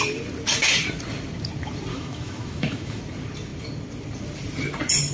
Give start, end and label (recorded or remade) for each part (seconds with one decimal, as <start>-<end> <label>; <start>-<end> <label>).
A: 0.0-1.9 recorded; 1.9-3.0 remade; 3.0-5.1 recorded

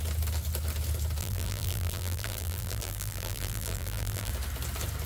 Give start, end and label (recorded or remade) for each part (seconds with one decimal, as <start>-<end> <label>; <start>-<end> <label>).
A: 0.0-1.2 recorded; 1.2-4.3 remade; 4.3-5.1 recorded

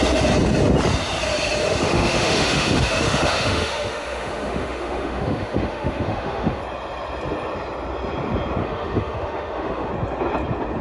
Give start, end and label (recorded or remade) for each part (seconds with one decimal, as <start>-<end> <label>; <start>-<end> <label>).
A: 0.0-1.6 recorded; 1.6-6.6 remade; 6.6-8.6 recorded; 8.6-9.9 remade; 9.9-10.8 recorded